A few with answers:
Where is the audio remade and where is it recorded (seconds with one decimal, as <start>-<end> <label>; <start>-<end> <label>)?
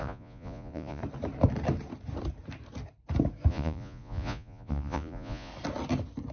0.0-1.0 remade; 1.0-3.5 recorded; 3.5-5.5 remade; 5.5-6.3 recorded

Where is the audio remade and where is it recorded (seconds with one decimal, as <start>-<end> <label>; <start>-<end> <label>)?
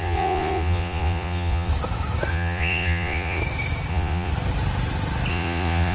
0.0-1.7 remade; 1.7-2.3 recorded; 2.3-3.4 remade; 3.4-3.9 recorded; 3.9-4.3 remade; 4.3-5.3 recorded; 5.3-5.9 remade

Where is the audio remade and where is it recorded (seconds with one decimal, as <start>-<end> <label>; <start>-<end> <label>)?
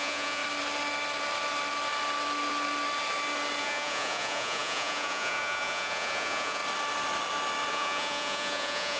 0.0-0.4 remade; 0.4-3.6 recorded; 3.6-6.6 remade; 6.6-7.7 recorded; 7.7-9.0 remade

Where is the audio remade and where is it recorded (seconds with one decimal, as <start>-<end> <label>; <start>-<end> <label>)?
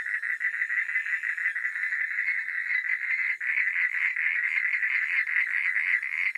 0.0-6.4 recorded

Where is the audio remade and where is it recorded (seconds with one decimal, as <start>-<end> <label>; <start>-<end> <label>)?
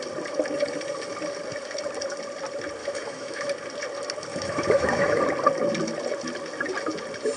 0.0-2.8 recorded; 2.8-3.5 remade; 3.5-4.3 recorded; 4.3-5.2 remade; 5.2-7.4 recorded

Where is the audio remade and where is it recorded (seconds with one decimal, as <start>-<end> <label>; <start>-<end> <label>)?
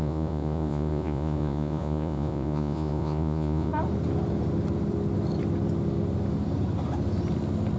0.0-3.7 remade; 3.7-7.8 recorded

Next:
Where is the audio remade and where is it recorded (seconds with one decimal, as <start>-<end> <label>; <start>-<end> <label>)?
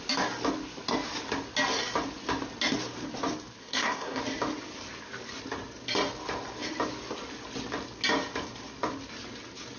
0.0-3.6 recorded; 3.6-4.2 remade; 4.2-9.8 recorded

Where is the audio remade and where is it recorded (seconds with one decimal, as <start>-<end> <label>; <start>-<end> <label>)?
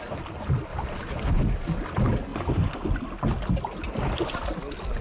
0.0-5.0 recorded